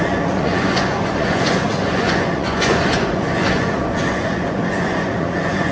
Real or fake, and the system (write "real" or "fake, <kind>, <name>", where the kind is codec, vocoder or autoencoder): fake, vocoder, Vocos